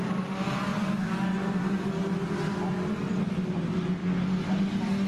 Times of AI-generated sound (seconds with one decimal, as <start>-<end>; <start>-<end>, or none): none